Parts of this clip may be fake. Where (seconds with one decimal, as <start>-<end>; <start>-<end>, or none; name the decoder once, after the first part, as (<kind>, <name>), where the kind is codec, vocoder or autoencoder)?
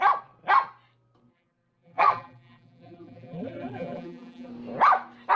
1.3-4.5 (vocoder, BigVGAN v2)